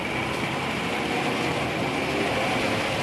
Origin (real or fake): real